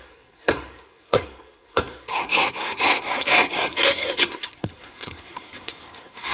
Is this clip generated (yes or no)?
yes